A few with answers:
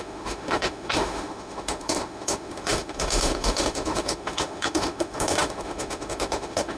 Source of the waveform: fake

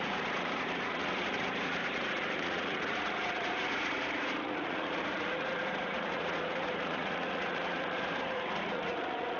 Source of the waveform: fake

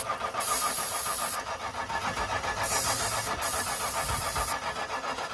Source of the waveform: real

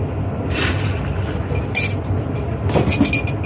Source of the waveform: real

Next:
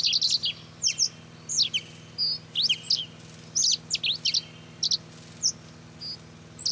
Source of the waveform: real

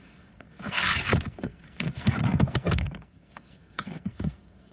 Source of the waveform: fake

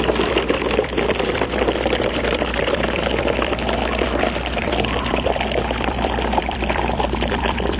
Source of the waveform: fake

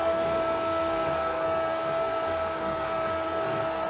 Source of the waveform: fake